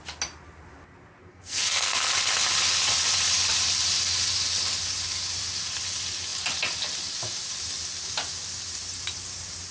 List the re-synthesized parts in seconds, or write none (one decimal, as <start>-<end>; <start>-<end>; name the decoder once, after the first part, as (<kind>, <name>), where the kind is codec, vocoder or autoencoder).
1.2-2.1 (codec, SNAC)